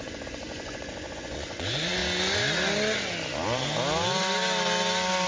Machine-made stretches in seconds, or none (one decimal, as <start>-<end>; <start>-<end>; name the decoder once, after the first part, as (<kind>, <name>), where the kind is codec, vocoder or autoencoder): 0.0-2.0 (vocoder, Vocos)